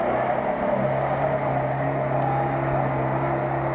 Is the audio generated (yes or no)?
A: no